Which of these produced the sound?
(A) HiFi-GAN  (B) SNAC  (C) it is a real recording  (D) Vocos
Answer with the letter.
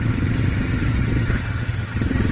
A